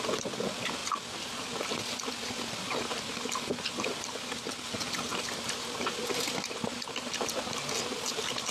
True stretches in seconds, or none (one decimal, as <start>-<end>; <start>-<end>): 0.0-0.8; 1.4-5.1; 7.2-8.5